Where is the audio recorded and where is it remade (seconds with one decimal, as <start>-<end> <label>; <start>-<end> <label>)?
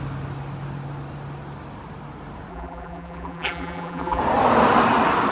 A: 0.0-2.5 recorded; 2.5-4.2 remade; 4.2-5.3 recorded